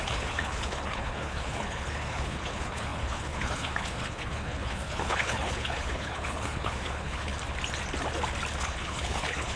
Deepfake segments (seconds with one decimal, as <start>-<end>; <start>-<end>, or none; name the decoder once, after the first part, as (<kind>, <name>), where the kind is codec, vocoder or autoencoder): 0.0-7.3 (codec, HILCodec); 8.6-9.6